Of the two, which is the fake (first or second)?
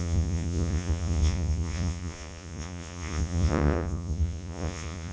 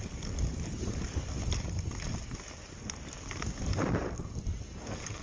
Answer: first